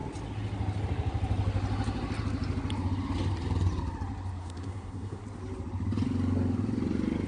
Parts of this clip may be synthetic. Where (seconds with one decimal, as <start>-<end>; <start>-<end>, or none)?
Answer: 4.4-5.2